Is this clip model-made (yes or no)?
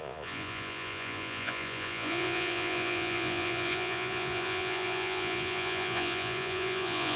yes